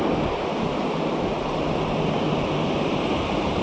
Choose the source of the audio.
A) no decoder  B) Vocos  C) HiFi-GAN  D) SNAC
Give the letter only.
A